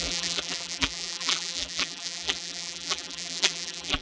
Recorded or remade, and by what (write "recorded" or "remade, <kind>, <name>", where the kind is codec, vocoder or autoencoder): remade, vocoder, BigVGAN v2